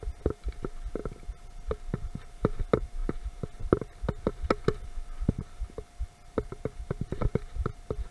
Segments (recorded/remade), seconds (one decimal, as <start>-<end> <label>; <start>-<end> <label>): 0.0-8.1 recorded

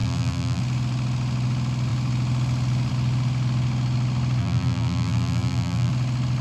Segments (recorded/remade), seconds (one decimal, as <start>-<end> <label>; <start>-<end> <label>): 0.0-0.6 remade; 0.6-4.4 recorded; 4.4-5.9 remade; 5.9-6.4 recorded

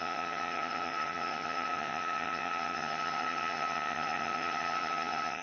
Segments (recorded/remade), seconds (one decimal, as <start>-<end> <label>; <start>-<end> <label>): 0.0-5.4 remade

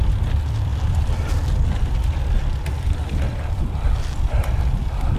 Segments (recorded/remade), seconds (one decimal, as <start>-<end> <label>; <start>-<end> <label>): 0.0-5.2 recorded

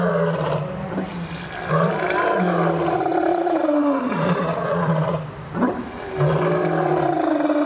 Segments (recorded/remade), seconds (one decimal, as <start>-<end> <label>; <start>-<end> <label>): 0.0-3.3 recorded; 3.3-5.2 remade; 5.2-7.7 recorded

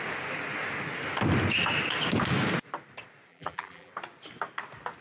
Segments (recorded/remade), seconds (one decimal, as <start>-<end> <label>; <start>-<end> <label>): 0.0-3.3 recorded; 3.3-3.9 remade; 3.9-5.0 recorded

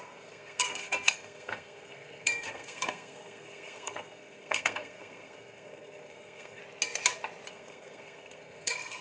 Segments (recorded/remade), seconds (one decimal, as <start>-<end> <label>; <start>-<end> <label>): 0.0-6.6 remade; 6.6-7.5 recorded; 7.5-9.0 remade

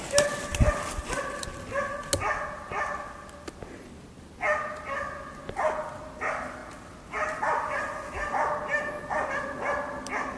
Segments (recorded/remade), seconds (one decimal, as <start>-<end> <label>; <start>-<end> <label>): 0.0-10.4 recorded